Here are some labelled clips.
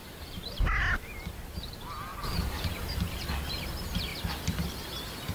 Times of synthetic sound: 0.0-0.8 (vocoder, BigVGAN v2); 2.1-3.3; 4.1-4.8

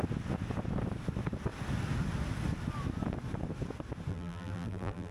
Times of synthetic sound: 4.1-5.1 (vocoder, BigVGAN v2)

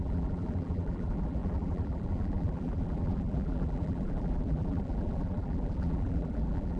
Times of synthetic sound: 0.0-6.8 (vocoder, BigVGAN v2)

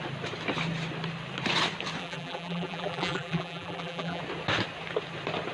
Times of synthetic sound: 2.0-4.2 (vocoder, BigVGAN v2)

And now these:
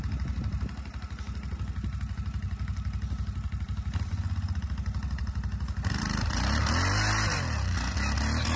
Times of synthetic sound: none